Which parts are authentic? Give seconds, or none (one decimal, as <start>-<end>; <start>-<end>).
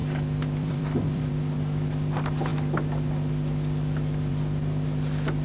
1.3-5.4